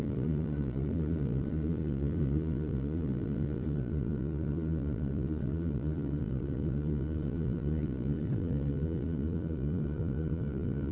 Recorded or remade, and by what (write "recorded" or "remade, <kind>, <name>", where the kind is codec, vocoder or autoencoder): remade, vocoder, Vocos